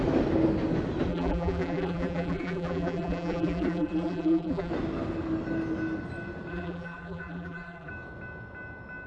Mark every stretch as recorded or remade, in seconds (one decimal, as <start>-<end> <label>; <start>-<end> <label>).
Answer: 0.0-1.1 recorded; 1.1-4.7 remade; 4.7-6.5 recorded; 6.5-7.9 remade; 7.9-9.1 recorded